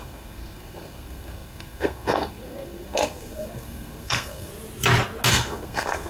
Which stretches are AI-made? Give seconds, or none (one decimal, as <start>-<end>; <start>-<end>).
0.0-4.5; 5.3-6.1